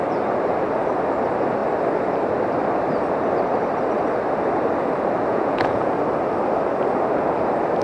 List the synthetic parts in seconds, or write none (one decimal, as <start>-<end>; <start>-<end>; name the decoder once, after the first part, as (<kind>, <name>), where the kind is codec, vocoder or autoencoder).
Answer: 5.3-5.9 (vocoder, Vocos)